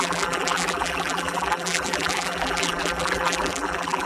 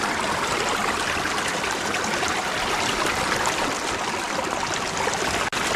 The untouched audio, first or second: second